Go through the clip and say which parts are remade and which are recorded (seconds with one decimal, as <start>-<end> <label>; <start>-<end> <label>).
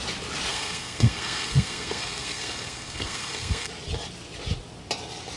0.0-0.5 recorded; 0.5-3.7 remade; 3.7-5.4 recorded